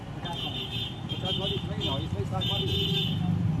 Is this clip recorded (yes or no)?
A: yes